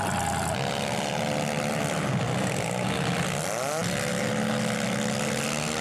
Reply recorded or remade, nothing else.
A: recorded